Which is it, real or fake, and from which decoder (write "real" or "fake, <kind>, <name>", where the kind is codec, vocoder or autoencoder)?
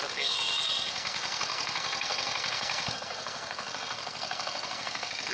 fake, codec, SNAC